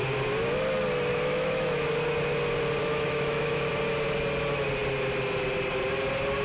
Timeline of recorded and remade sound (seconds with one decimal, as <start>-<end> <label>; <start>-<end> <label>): 0.0-1.1 recorded; 1.1-1.9 remade; 1.9-2.8 recorded; 2.8-3.7 remade; 3.7-6.4 recorded